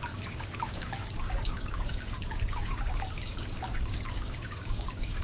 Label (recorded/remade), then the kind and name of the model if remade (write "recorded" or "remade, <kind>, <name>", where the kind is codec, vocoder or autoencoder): remade, codec, DAC